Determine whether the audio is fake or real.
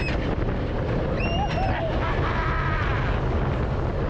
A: real